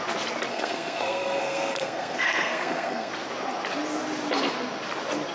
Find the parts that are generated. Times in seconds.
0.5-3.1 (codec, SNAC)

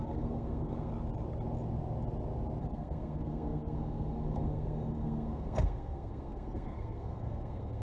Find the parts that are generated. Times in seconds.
0.0-0.9 (codec, SNAC); 2.6-7.8